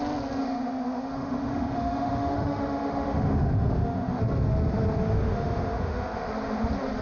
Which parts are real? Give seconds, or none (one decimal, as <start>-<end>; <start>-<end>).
0.0-0.4; 4.2-5.0; 6.3-7.0